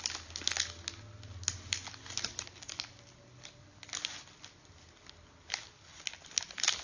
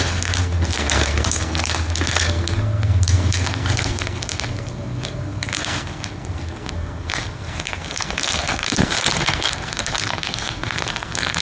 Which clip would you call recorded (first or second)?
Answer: first